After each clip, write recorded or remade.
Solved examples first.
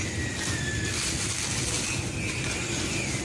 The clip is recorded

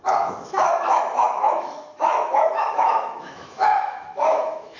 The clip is remade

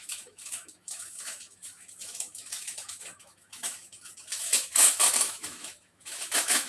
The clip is remade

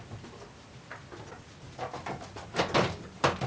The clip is recorded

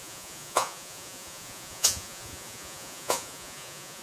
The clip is remade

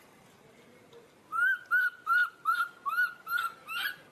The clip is recorded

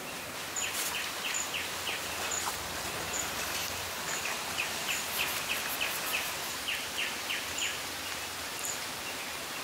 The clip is remade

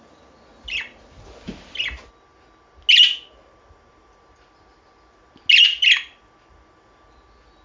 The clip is recorded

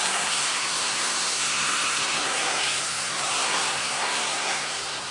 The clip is remade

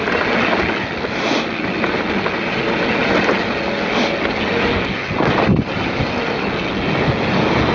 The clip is recorded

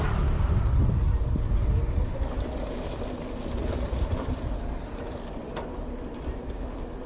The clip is recorded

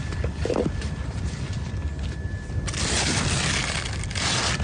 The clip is recorded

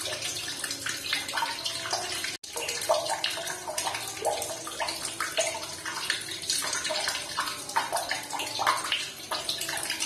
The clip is recorded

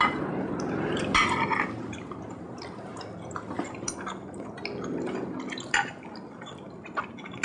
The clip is recorded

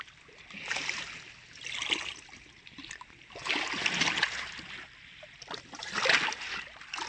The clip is recorded